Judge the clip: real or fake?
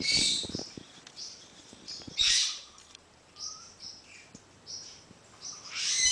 fake